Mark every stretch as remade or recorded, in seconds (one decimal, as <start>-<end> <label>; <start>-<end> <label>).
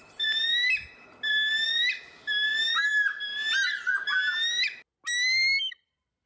0.0-6.3 recorded